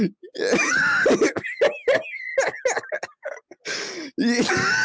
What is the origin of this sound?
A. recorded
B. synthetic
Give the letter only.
A